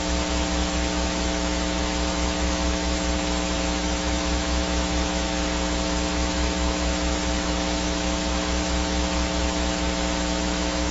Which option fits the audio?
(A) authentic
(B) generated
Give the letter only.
B